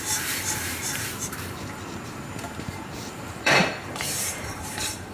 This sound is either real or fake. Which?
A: fake